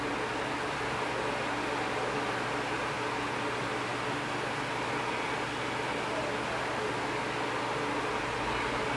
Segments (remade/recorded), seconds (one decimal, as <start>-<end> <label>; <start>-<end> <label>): 0.0-9.0 recorded